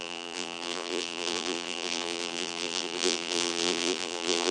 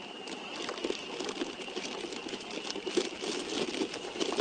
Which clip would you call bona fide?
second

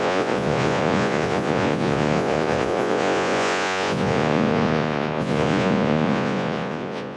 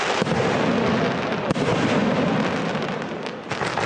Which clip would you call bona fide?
second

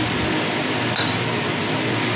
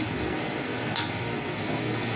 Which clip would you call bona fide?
first